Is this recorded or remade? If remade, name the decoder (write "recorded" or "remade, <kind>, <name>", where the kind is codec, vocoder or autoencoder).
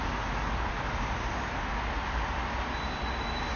recorded